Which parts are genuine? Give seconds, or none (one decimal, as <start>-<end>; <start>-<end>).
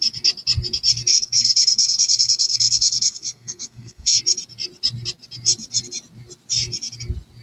0.0-1.1; 4.2-7.4